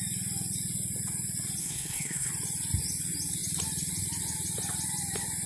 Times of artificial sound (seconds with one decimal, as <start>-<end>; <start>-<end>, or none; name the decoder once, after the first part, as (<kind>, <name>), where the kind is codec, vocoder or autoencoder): 1.6-2.3 (codec, SNAC)